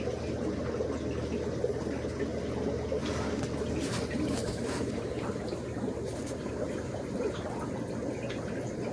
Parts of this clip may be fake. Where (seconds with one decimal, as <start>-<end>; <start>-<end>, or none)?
4.4-7.7